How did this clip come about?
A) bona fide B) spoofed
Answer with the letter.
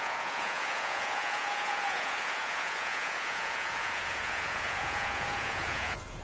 B